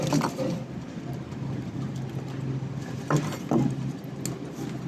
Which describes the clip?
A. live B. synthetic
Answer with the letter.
A